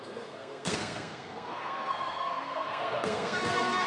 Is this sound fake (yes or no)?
yes